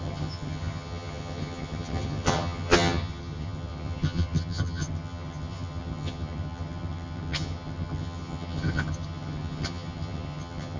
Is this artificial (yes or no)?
yes